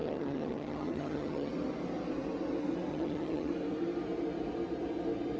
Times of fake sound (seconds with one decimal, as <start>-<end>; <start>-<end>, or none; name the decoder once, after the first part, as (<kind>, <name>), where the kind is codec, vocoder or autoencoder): 0.0-1.5 (vocoder, HiFi-GAN); 2.9-3.5